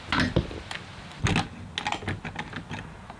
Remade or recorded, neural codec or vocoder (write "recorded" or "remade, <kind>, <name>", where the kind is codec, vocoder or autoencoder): recorded